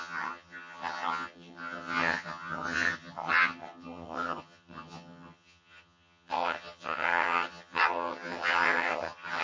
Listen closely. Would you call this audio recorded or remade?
remade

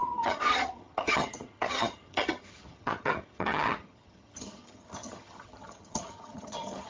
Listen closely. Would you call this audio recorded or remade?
remade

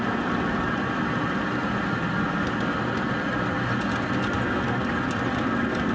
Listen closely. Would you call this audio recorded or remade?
recorded